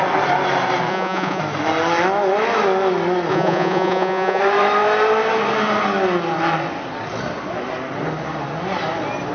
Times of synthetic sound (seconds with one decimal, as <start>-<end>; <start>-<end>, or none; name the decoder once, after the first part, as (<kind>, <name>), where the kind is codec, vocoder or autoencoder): 0.9-1.4 (vocoder, Vocos); 3.3-4.4